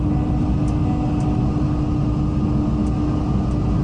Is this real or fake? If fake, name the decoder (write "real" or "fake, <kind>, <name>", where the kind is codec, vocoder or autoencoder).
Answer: real